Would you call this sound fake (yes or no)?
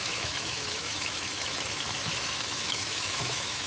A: yes